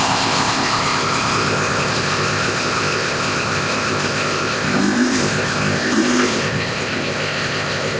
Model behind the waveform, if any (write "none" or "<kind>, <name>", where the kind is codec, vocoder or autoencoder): codec, ZipCodec